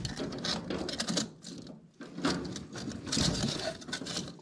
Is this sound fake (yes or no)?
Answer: no